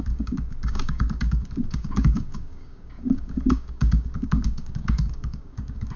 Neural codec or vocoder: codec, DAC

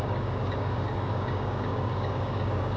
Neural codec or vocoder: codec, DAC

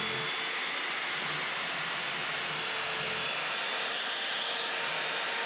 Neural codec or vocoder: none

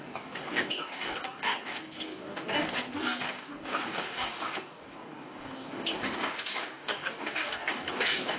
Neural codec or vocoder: codec, DAC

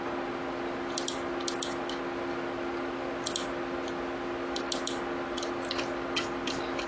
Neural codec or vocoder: none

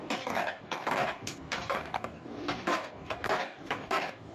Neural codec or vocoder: codec, DAC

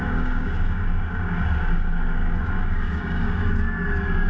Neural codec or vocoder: codec, DAC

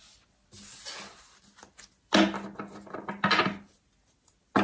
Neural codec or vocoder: none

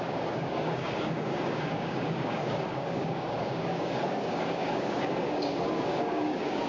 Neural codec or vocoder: codec, DAC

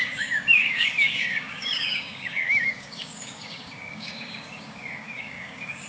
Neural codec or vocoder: codec, DAC